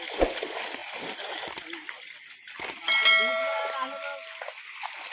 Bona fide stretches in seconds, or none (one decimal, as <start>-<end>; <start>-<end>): 0.0-5.1